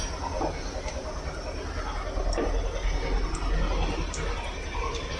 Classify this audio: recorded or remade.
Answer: recorded